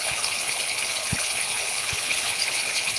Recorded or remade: remade